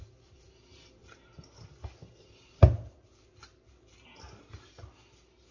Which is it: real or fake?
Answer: real